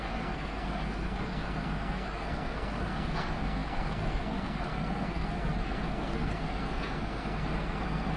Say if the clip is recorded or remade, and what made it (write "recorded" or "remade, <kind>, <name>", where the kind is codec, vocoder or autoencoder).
remade, codec, SNAC